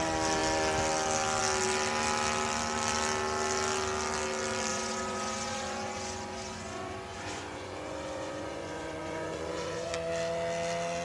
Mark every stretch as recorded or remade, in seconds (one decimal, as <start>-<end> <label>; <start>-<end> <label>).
0.0-4.7 recorded; 4.7-9.9 remade; 9.9-11.0 recorded